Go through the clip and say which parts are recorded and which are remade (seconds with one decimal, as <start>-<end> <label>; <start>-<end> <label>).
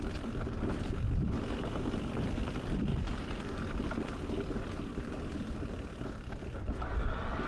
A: 0.0-2.9 recorded; 2.9-3.6 remade; 3.6-4.9 recorded; 4.9-6.4 remade; 6.4-7.5 recorded